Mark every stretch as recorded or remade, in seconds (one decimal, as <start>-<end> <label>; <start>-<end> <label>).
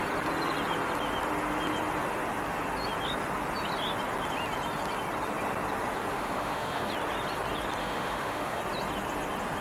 0.0-6.1 recorded; 6.1-6.9 remade; 6.9-7.8 recorded; 7.8-8.6 remade; 8.6-9.6 recorded